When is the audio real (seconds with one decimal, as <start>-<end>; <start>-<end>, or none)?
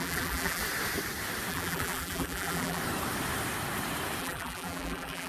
0.6-1.5; 2.8-4.2